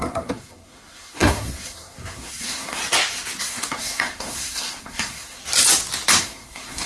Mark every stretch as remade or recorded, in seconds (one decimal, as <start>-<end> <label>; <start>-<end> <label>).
0.0-2.8 remade; 2.8-3.4 recorded; 3.4-5.4 remade; 5.4-6.2 recorded; 6.2-6.9 remade